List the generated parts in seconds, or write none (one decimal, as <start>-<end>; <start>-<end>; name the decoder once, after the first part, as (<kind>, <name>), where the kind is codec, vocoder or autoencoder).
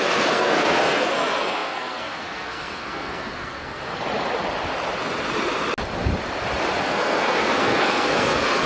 0.0-3.9 (codec, SNAC); 6.8-8.7